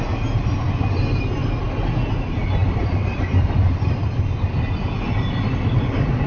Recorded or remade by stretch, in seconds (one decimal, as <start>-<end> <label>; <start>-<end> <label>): 0.0-2.6 recorded; 2.6-6.3 remade